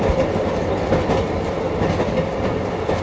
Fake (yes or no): no